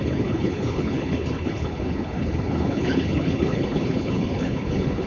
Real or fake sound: fake